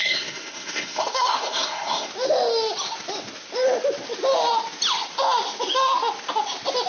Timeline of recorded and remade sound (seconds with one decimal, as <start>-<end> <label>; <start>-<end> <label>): 0.0-2.1 remade; 2.1-6.9 recorded

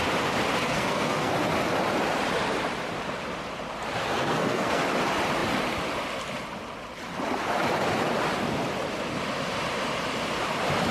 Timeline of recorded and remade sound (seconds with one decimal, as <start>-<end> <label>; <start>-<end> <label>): 0.0-0.6 recorded; 0.6-1.3 remade; 1.3-4.0 recorded; 4.0-4.8 remade; 4.8-10.9 recorded